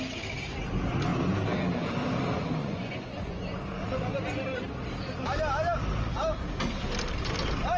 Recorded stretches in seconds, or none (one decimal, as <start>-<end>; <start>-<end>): 0.0-2.6; 3.4-7.8